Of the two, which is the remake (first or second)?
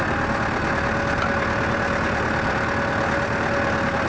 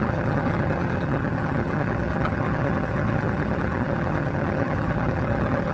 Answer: second